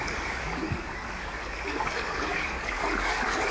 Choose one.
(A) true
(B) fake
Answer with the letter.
B